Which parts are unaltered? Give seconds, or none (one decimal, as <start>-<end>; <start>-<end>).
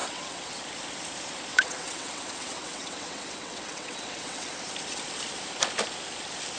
0.6-1.5; 4.5-6.6